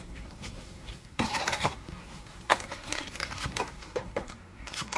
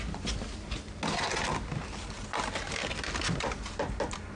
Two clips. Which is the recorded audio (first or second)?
second